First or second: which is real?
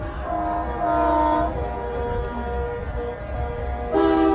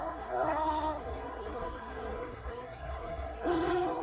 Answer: first